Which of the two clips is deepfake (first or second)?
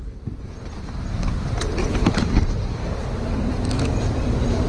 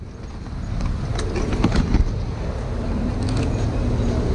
first